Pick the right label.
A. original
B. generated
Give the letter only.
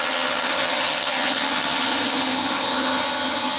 B